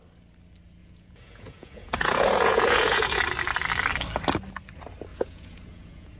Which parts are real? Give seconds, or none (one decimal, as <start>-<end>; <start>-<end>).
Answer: 0.0-0.8; 3.2-5.1